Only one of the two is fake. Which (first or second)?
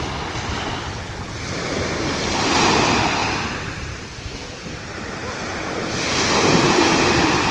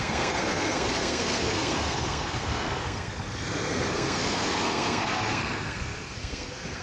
second